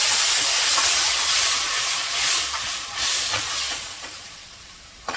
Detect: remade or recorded remade